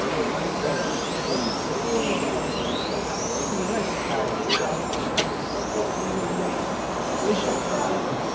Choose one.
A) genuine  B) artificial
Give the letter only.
A